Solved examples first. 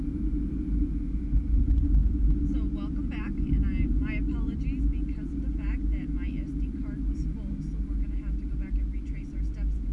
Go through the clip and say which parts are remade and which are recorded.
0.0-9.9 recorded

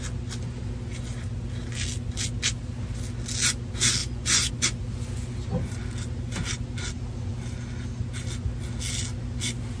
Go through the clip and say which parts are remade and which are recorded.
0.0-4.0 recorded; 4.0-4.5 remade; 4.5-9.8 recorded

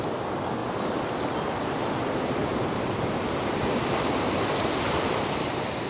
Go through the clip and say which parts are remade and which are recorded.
0.0-0.6 recorded; 0.6-1.5 remade; 1.5-2.4 recorded; 2.4-5.9 remade

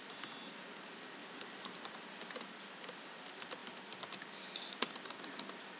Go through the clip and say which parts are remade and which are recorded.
0.0-1.2 recorded; 1.2-2.4 remade; 2.4-3.6 recorded; 3.6-4.4 remade; 4.4-5.8 recorded

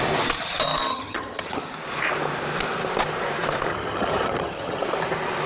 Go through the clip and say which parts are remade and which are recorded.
0.0-0.9 recorded; 0.9-1.6 remade; 1.6-3.7 recorded; 3.7-4.8 remade; 4.8-5.5 recorded